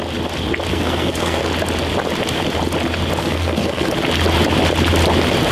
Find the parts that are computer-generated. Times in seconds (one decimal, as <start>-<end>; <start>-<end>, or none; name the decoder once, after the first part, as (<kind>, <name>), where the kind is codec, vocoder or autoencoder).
0.7-1.4 (codec, SNAC); 3.2-3.9